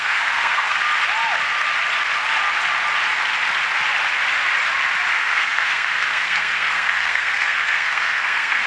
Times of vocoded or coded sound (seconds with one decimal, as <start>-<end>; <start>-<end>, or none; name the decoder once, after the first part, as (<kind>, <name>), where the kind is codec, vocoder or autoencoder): 0.0-0.8 (codec, SNAC); 5.1-8.7